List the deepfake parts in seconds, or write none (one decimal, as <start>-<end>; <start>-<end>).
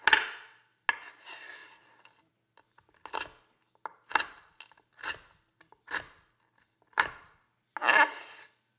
none